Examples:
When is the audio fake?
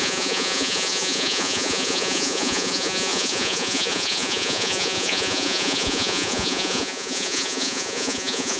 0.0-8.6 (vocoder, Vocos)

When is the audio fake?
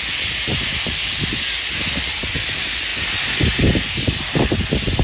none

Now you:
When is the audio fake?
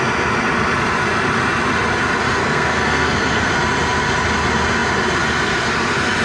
2.4-3.5 (codec, SNAC)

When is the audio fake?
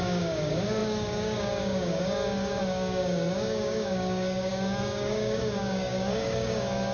0.0-6.9 (codec, DAC)